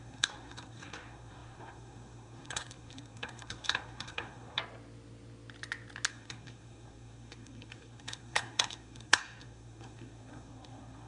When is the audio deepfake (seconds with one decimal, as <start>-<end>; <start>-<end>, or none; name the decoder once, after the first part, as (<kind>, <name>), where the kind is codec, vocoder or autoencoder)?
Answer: 0.0-4.6 (codec, SNAC); 6.1-11.1